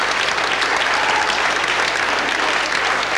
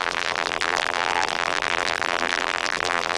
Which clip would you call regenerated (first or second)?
second